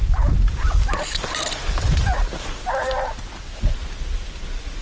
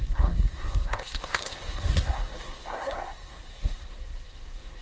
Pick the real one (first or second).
first